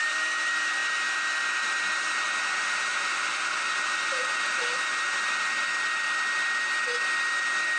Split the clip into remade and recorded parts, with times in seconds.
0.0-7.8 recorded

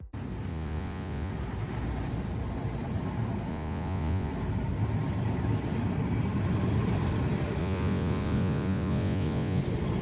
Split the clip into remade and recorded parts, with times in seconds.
0.0-0.5 recorded; 0.5-1.3 remade; 1.3-3.5 recorded; 3.5-4.3 remade; 4.3-7.6 recorded; 7.6-9.6 remade; 9.6-10.0 recorded

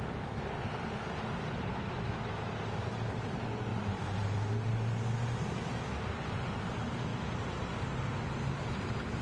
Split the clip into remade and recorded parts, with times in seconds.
0.0-1.7 recorded; 1.7-2.5 remade; 2.5-9.2 recorded

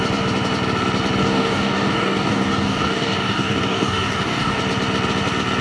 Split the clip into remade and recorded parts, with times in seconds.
0.0-1.2 recorded; 1.2-4.6 remade; 4.6-5.6 recorded

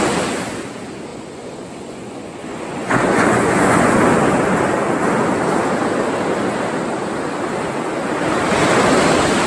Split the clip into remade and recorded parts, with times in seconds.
0.0-1.1 recorded; 1.1-4.0 remade; 4.0-9.5 recorded